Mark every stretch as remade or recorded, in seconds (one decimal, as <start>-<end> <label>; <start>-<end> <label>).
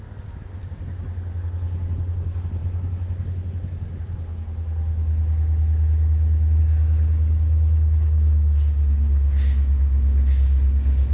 0.0-11.1 recorded